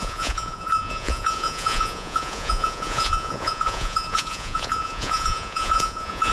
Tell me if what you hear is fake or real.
fake